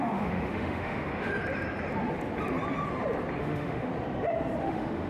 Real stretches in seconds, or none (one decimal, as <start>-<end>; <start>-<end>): 1.3-3.4; 3.9-4.6